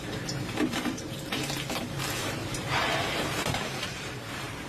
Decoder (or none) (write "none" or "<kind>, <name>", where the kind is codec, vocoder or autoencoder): vocoder, BigVGAN v2